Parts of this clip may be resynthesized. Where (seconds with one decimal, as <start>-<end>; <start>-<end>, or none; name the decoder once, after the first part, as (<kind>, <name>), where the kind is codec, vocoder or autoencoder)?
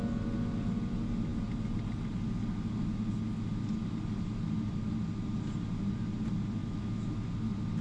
6.6-7.1 (autoencoder, DAC-VAE)